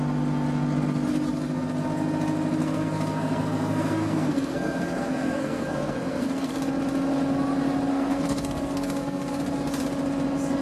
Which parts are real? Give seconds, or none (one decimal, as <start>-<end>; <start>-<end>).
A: 0.0-2.6; 6.5-7.9; 9.4-10.6